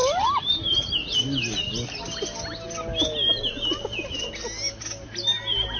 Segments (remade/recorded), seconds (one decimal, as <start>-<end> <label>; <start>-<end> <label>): 0.0-5.8 recorded